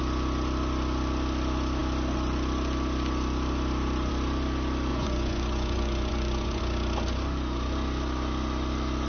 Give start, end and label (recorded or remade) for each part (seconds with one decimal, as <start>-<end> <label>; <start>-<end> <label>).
0.0-4.9 recorded; 4.9-6.6 remade; 6.6-9.1 recorded